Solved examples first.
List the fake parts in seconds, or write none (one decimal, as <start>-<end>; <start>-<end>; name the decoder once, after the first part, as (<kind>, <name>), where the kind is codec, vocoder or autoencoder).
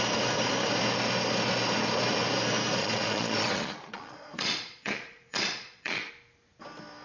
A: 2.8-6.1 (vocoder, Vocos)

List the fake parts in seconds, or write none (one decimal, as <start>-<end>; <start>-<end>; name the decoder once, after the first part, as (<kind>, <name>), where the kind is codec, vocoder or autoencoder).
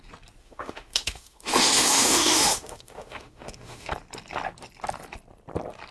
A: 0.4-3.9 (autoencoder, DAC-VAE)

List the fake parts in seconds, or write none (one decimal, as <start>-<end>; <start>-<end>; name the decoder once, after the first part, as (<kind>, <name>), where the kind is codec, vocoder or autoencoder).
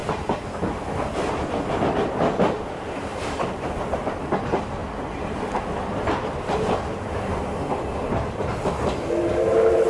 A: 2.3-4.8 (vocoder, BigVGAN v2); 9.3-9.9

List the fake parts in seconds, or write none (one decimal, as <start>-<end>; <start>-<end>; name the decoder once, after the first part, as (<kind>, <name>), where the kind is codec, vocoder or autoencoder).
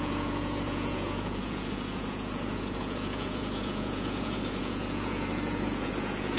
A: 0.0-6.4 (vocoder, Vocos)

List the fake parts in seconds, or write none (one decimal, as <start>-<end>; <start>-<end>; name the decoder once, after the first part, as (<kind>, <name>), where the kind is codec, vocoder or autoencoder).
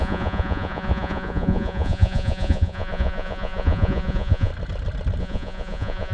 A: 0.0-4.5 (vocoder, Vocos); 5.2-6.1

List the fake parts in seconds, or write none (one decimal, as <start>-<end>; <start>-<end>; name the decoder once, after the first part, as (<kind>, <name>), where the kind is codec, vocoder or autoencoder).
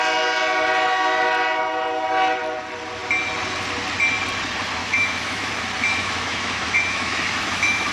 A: 4.8-5.5 (autoencoder, DAC-VAE); 6.0-7.9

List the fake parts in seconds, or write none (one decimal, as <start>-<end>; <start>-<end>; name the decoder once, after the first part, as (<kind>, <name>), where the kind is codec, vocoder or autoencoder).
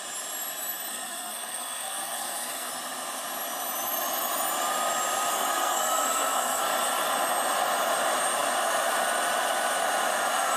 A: 0.9-2.7 (codec, SNAC); 5.3-6.6